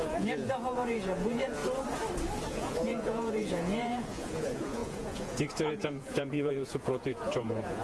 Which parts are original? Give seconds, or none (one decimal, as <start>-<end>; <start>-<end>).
1.6-2.5